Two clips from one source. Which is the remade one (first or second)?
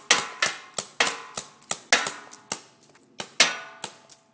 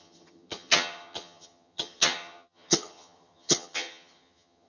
second